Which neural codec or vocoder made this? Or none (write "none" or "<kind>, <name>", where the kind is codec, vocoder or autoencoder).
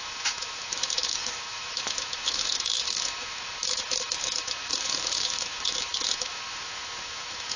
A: autoencoder, DAC-VAE